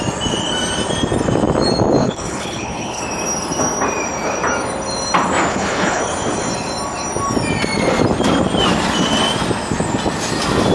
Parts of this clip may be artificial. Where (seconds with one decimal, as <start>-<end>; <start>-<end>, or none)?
2.0-3.0; 5.5-6.0